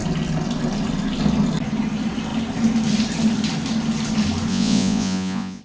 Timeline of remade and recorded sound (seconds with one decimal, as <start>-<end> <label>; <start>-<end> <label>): 0.0-4.5 recorded; 4.5-5.6 remade